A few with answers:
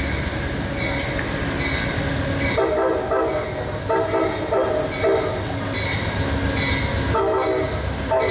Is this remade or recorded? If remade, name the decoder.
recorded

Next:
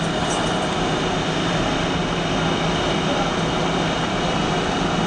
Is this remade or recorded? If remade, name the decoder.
recorded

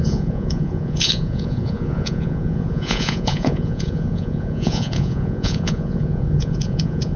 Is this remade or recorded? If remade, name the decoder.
remade, vocoder, Vocos